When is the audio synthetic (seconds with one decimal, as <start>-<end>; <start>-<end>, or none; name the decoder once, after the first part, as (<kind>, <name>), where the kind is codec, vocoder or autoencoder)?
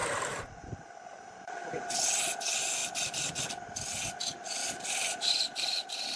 0.0-1.9 (vocoder, BigVGAN v2); 4.6-5.3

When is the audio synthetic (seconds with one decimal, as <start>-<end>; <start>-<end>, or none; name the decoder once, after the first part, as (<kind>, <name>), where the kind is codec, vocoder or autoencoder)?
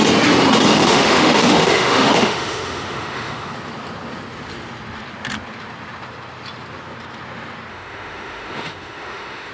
0.7-3.5 (autoencoder, DAC-VAE); 7.7-9.5